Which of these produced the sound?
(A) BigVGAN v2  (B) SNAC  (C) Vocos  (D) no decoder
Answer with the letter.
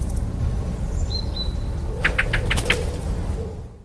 D